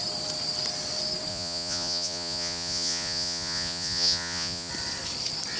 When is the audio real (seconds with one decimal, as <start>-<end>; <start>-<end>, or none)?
0.0-1.3; 4.7-5.6